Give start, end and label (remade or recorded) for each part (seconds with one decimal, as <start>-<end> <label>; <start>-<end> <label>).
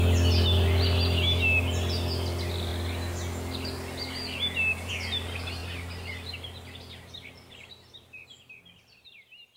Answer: 0.0-9.6 recorded